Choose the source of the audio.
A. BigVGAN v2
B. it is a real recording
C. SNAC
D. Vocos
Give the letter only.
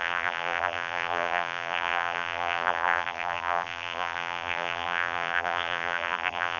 A